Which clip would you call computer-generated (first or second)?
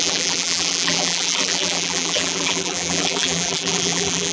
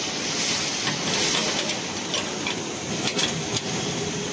first